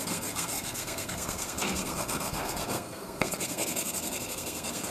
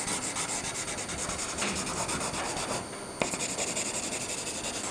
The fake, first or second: first